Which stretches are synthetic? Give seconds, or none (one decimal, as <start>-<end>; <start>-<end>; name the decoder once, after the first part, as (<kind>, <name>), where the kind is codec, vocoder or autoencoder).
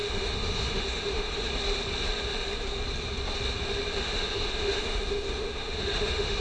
0.0-1.5 (autoencoder, DAC-VAE); 4.0-6.4